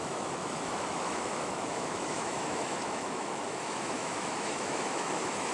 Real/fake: fake